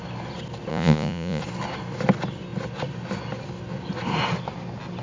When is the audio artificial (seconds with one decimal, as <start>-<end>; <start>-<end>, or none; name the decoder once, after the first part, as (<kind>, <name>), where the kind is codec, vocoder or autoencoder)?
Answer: 0.7-1.4 (vocoder, Vocos)